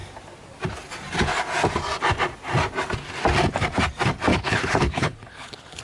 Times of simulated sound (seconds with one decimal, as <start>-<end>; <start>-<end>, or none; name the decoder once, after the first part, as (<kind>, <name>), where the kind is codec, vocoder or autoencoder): 4.3-5.8 (codec, HILCodec)